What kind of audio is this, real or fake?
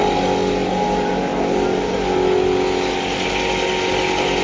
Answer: real